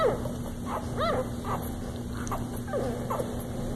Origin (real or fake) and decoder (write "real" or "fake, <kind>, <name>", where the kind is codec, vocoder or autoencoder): real